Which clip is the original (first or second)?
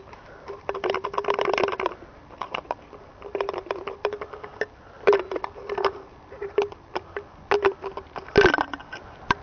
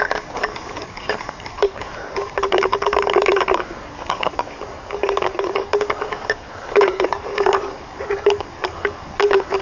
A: first